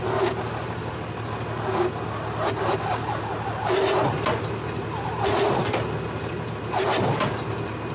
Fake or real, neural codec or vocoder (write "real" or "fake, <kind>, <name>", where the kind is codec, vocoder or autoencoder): real